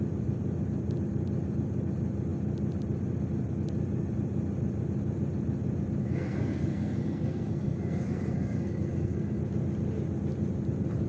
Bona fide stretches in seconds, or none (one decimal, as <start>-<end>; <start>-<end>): 0.0-6.0; 9.4-11.1